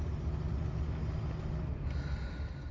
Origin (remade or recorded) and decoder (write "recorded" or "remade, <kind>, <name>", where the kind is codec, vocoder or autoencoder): recorded